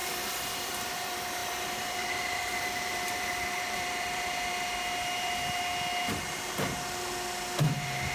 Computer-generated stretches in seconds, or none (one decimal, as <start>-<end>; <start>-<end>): 1.4-4.3; 5.0-5.6